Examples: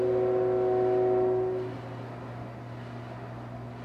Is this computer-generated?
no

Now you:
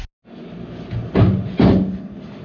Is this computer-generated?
no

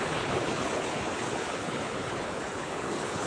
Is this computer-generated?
yes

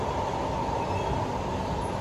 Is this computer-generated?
no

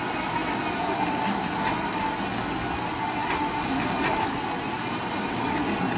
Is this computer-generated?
no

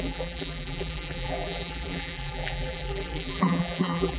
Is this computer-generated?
yes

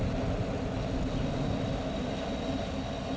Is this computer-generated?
no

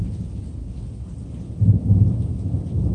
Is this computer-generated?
no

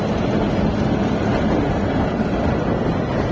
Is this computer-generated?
no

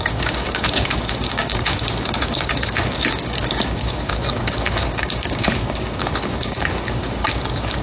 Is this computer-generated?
yes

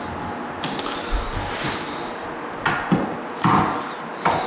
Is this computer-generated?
no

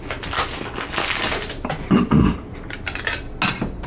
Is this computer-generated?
no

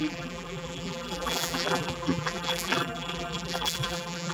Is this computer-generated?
yes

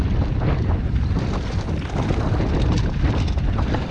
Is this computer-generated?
yes